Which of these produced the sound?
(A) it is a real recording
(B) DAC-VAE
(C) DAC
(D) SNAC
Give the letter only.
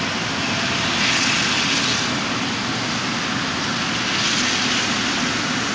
A